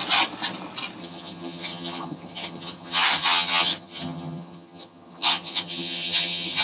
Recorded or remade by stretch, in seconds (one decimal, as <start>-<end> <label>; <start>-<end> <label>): 0.0-1.0 recorded; 1.0-6.6 remade